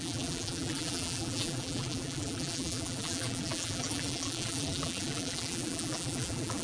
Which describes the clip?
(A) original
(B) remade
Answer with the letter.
B